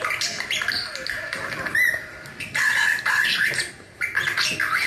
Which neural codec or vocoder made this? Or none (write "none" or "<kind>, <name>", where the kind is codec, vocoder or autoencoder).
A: none